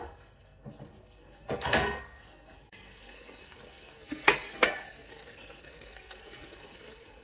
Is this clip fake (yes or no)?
yes